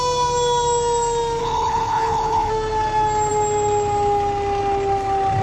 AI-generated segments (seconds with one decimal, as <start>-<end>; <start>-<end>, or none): 1.4-2.5